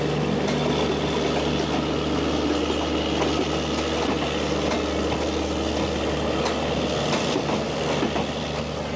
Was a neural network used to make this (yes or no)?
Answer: no